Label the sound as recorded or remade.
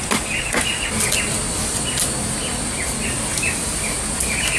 recorded